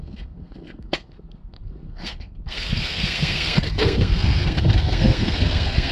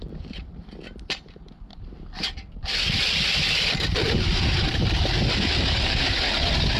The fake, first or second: first